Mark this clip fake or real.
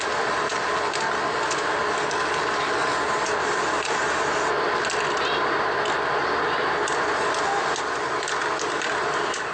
real